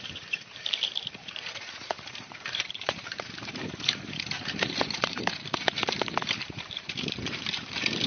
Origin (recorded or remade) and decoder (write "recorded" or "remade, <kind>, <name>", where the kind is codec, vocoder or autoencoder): remade, vocoder, BigVGAN v2